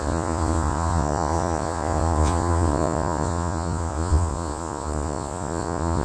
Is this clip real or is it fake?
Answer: fake